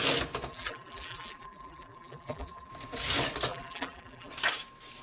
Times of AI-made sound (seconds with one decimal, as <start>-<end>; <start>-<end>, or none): 0.5-2.7; 3.5-4.3